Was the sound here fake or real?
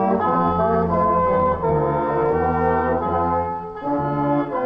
real